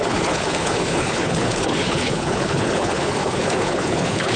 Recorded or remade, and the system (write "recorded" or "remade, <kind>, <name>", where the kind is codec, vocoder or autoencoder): remade, codec, HILCodec